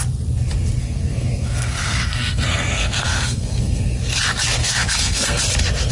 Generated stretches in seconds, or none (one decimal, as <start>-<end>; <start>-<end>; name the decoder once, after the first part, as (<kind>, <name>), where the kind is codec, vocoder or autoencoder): 0.8-4.0 (codec, SNAC); 4.6-5.4